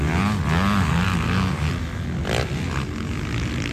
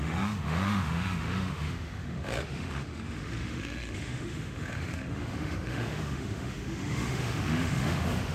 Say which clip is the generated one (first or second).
second